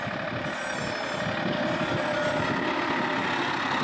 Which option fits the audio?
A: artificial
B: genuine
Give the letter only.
B